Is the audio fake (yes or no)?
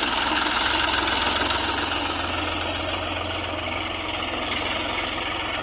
no